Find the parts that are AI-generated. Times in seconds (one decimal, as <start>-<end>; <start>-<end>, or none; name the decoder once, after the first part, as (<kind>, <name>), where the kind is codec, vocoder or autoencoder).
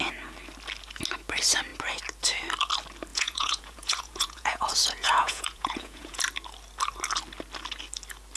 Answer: 3.1-6.2 (vocoder, Vocos)